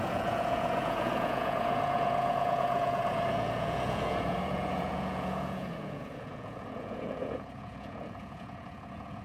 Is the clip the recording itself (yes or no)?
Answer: no